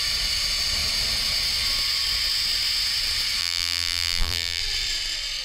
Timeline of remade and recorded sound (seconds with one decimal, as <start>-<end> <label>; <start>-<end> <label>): 0.0-3.4 recorded; 3.4-4.6 remade; 4.6-5.4 recorded